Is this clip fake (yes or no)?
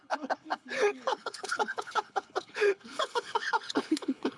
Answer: yes